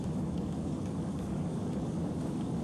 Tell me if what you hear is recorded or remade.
remade